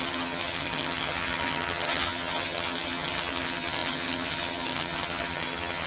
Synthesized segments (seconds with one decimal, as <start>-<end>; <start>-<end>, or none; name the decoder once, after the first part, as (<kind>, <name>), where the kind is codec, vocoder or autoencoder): 0.0-5.9 (vocoder, HiFi-GAN)

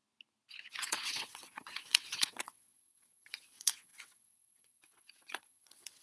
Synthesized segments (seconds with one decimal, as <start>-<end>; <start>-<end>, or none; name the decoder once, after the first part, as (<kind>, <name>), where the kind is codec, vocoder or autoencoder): 0.7-6.0 (vocoder, WaveNeXt)

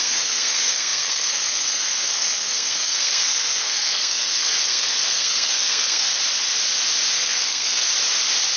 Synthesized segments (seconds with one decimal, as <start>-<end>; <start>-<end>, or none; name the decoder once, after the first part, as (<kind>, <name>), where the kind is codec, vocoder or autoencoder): 0.0-6.1 (codec, SNAC); 7.1-7.9

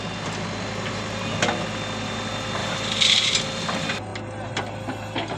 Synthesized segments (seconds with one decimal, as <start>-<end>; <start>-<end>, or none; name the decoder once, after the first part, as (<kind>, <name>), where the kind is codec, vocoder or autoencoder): 2.6-3.4 (vocoder, BigVGAN v2)

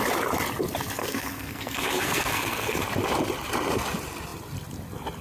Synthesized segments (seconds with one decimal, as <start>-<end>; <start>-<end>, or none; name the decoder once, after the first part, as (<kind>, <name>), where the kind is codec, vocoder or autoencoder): 1.0-2.8 (codec, SNAC)